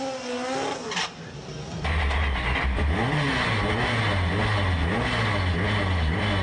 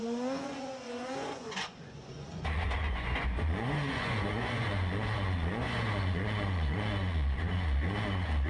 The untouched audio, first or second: first